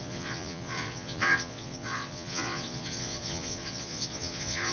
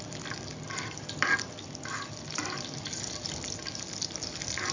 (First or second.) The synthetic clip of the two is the first